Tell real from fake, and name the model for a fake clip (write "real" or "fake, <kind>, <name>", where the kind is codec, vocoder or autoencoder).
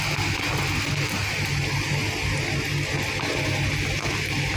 real